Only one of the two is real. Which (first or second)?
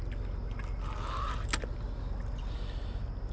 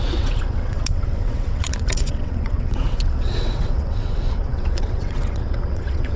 first